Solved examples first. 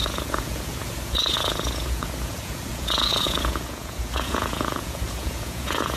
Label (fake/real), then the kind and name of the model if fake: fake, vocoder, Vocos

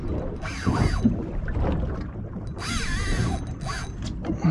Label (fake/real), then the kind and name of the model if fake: real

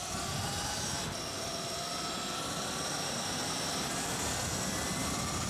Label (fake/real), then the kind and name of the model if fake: fake, vocoder, BigVGAN v2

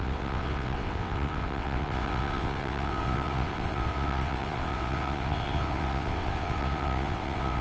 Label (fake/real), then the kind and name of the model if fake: fake, vocoder, WaveNeXt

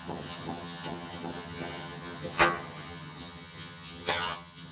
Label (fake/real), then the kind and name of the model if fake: fake, vocoder, HiFi-GAN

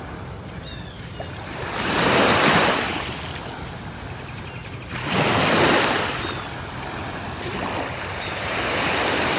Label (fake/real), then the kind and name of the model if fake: real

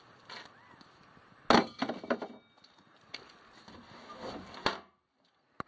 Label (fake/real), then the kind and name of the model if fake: real